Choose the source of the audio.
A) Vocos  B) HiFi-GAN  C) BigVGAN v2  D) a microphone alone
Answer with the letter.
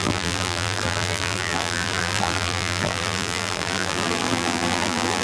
C